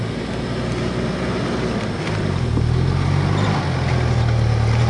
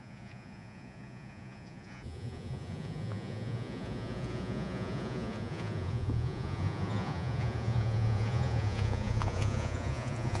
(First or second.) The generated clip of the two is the second